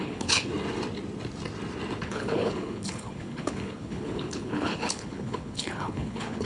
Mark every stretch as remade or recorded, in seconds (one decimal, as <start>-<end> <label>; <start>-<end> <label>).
0.0-0.5 remade; 0.5-2.0 recorded; 2.0-6.5 remade